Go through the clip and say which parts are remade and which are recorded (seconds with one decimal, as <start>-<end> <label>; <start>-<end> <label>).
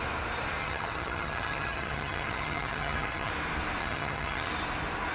0.0-0.6 recorded; 0.6-3.3 remade; 3.3-3.8 recorded; 3.8-4.5 remade; 4.5-5.1 recorded